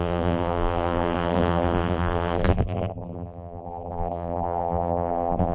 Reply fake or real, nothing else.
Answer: fake